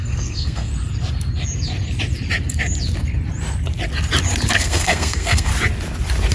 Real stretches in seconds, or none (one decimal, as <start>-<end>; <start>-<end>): 0.7-4.5; 5.5-6.3